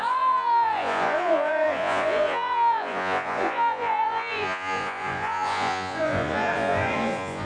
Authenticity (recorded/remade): remade